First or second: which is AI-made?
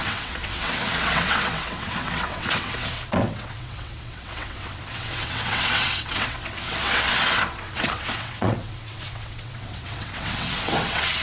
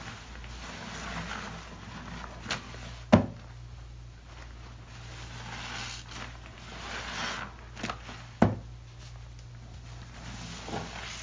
first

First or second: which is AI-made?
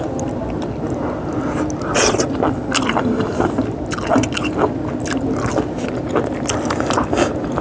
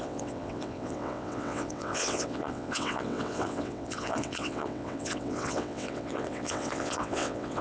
second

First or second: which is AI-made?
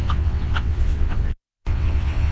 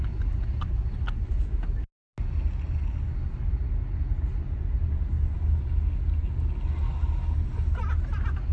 first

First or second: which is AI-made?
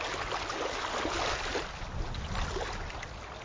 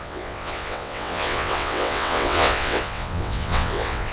second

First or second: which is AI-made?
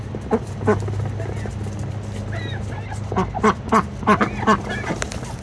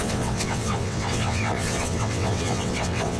second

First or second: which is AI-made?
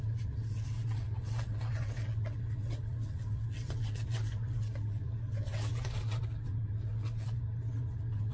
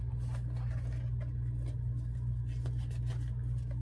first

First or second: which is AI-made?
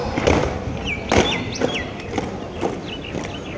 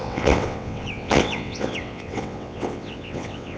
second